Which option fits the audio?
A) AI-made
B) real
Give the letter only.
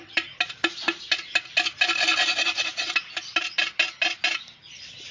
B